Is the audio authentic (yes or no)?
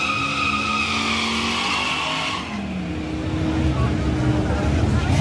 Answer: yes